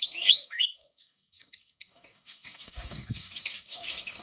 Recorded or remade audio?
remade